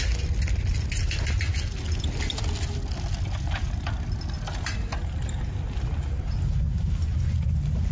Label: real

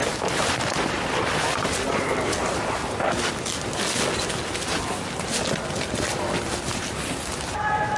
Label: real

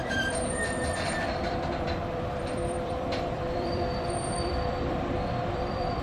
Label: fake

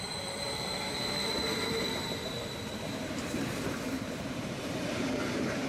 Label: fake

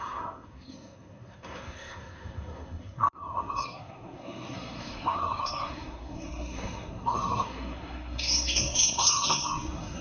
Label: fake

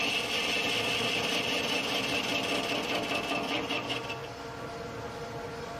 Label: real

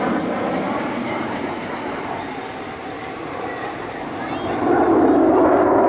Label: fake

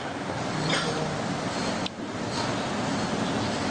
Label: real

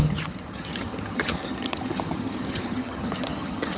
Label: fake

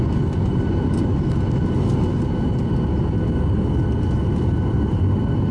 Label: real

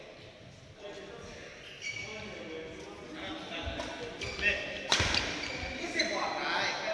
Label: real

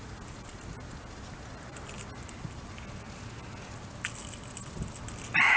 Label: real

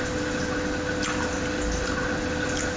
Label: real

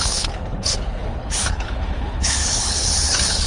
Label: fake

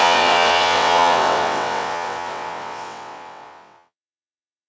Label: fake